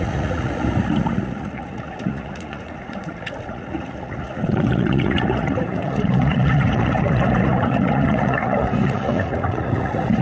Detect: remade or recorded remade